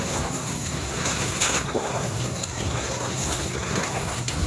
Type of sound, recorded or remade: remade